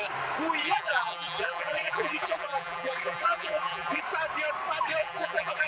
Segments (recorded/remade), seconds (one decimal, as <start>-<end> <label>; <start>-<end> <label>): 0.0-0.6 recorded; 0.6-4.0 remade; 4.0-5.0 recorded; 5.0-5.7 remade